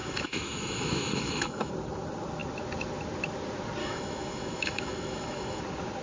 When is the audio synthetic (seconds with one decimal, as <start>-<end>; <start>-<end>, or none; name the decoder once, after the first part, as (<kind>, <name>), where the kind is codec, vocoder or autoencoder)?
0.0-1.7 (autoencoder, DAC-VAE); 3.8-5.6